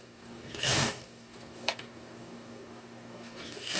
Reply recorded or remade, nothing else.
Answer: remade